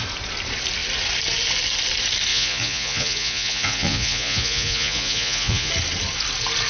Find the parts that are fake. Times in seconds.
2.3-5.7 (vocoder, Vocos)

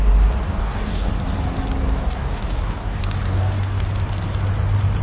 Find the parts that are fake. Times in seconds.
0.6-1.1 (codec, DAC); 1.9-3.8

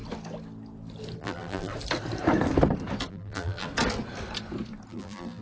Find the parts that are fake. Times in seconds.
1.2-1.7 (vocoder, BigVGAN v2); 3.1-3.7; 4.9-5.4